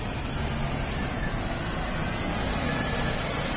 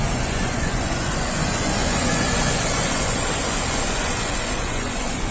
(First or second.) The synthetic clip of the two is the second